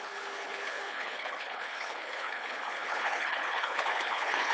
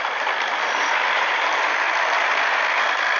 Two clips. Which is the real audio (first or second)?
second